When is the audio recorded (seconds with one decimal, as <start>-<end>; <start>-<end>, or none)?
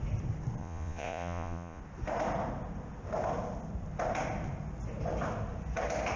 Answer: 0.0-0.6; 1.8-6.2